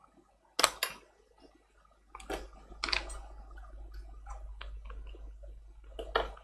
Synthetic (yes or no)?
no